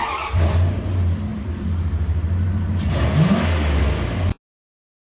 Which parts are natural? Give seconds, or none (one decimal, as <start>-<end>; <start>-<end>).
0.0-1.3; 3.3-5.1